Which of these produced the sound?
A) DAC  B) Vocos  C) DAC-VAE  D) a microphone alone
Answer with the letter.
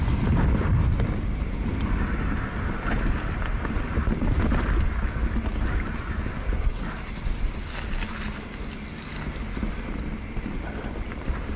D